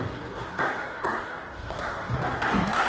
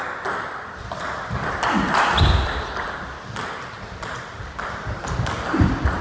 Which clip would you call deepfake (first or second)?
first